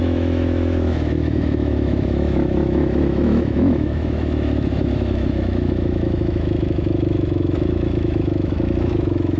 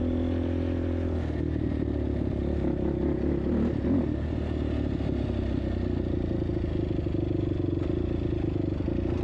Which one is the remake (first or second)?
first